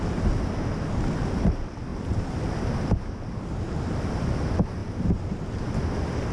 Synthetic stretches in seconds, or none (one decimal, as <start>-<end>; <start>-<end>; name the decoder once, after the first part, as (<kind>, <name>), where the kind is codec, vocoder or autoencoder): 1.9-2.8 (vocoder, BigVGAN v2)